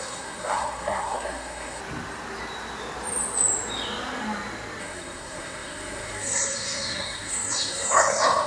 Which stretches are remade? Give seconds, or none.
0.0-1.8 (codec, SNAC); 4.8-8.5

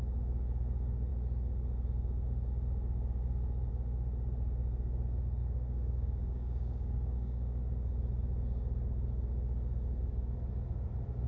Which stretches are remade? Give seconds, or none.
5.4-7.6 (codec, DAC)

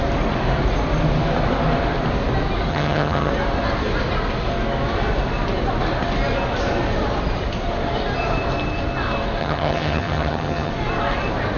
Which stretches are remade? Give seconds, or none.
2.7-3.3 (vocoder, HiFi-GAN); 9.4-10.7

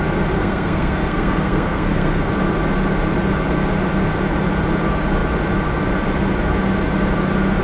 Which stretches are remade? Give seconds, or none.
0.4-2.3 (codec, SNAC)

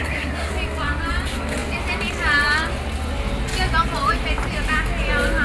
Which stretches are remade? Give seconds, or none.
0.0-0.5 (codec, SNAC)

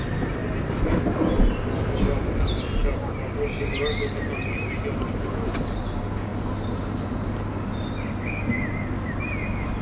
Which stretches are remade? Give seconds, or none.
none

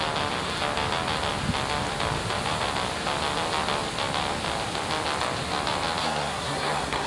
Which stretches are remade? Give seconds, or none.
6.0-7.1 (codec, SNAC)